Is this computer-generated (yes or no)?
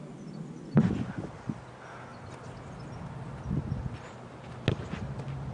no